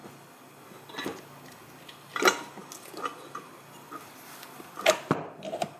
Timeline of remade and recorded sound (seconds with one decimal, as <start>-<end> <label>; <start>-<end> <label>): 0.0-5.8 recorded